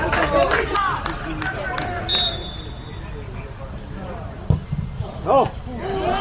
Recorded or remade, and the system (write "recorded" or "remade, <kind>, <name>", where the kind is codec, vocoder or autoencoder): recorded